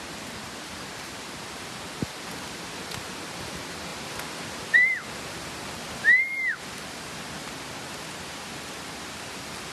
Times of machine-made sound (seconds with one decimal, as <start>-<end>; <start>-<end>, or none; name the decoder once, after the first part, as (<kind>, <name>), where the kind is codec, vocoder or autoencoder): none